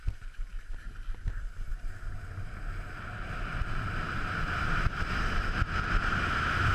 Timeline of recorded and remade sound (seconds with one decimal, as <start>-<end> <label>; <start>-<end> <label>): 0.0-6.7 recorded